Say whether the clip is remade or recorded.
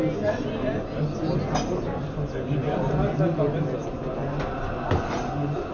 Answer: recorded